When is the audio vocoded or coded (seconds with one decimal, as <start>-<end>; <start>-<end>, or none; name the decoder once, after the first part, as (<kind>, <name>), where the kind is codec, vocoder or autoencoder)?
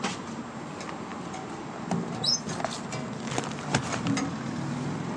none